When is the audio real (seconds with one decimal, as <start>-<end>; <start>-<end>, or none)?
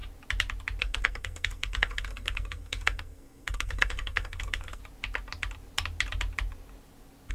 0.0-0.8; 4.8-7.3